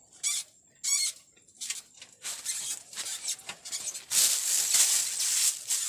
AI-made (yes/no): no